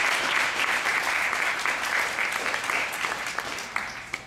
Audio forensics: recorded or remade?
remade